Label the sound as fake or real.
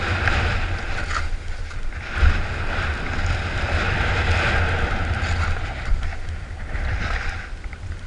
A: real